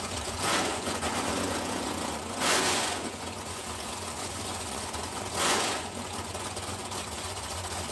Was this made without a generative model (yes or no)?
no